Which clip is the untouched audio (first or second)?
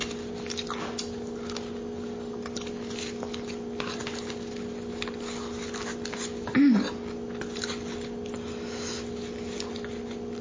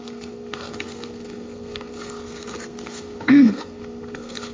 first